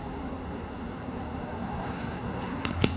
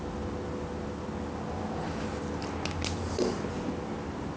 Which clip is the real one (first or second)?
second